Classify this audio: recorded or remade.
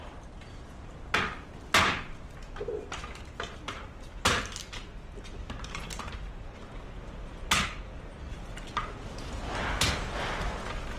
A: recorded